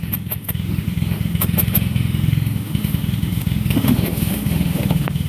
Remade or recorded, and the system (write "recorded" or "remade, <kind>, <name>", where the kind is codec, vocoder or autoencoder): remade, autoencoder, DAC-VAE